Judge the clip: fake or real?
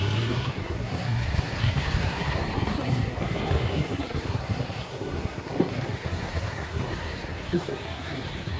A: fake